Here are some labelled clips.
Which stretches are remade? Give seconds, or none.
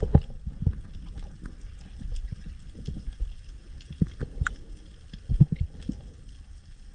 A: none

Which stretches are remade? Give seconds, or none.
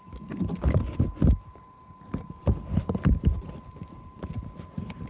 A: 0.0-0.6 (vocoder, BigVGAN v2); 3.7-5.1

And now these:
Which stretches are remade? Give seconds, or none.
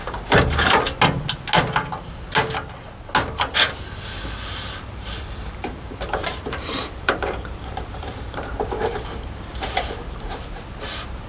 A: 0.0-0.8 (vocoder, BigVGAN v2); 4.5-8.5